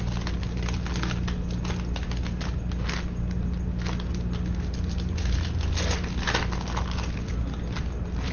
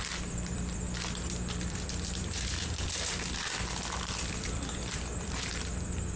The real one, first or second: first